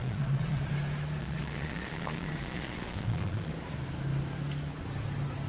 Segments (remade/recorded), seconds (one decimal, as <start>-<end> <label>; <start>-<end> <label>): 0.0-0.7 remade; 0.7-1.2 recorded; 1.2-3.5 remade; 3.5-5.5 recorded